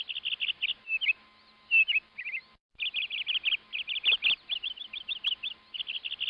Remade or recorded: recorded